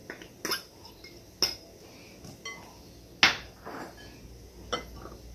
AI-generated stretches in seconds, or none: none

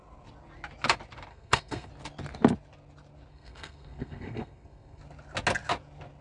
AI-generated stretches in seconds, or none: 1.3-1.9 (codec, SNAC); 3.3-5.0

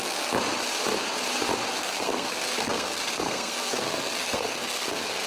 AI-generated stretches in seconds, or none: 1.8-5.3 (codec, SNAC)

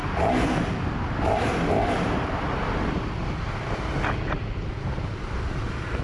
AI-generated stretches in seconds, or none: none

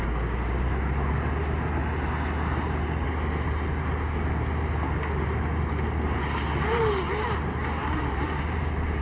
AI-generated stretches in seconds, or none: 7.8-9.0 (vocoder, BigVGAN v2)

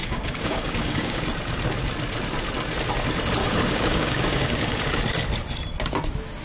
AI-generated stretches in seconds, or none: 0.0-1.2 (codec, DAC); 3.4-4.9

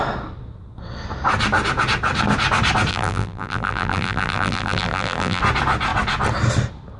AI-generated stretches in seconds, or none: 2.9-5.4 (vocoder, BigVGAN v2)

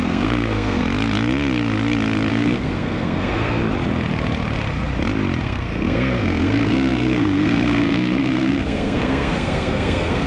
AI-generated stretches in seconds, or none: 0.0-0.8 (codec, SNAC); 2.3-3.6; 5.4-10.3